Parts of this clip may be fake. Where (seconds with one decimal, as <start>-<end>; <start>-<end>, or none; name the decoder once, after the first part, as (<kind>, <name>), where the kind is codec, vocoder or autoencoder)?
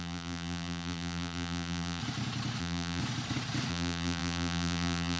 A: 0.0-2.0 (vocoder, BigVGAN v2); 2.6-3.0; 3.7-5.2